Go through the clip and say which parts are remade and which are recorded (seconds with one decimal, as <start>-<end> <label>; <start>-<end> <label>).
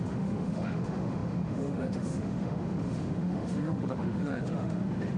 0.0-5.2 remade